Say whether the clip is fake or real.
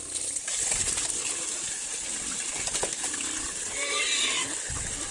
real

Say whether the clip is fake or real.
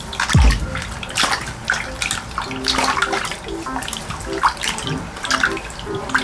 real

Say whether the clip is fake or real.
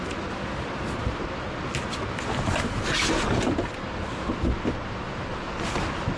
real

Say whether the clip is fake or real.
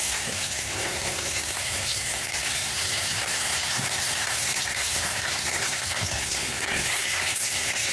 fake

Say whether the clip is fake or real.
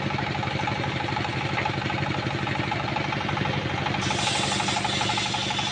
real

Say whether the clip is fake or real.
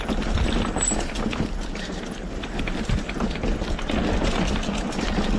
real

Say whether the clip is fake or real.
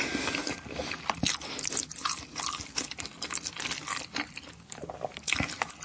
real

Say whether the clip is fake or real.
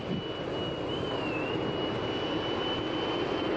real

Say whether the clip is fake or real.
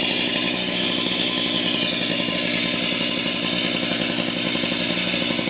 real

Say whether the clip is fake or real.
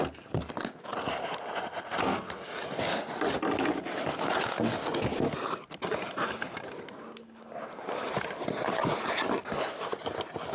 real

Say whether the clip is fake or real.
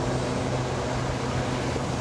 real